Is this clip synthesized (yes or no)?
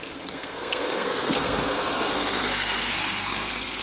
yes